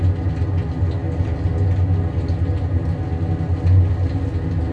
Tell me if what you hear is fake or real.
real